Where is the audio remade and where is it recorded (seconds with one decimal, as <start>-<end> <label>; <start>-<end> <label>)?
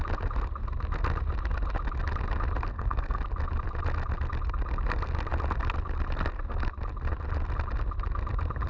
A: 0.0-2.7 recorded; 2.7-3.2 remade; 3.2-8.7 recorded